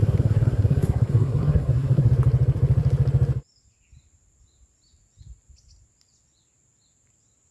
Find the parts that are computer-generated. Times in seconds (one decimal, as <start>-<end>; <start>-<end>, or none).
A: 0.0-2.1